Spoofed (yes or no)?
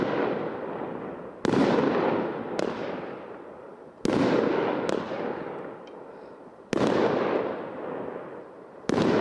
no